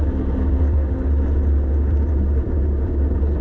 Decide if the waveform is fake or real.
real